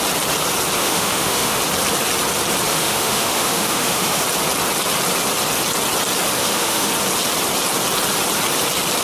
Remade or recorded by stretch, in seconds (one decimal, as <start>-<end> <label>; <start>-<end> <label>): 0.0-0.8 recorded; 0.8-1.6 remade; 1.6-2.7 recorded; 2.7-4.2 remade; 4.2-6.4 recorded; 6.4-6.9 remade; 6.9-9.0 recorded